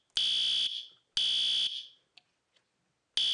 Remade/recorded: recorded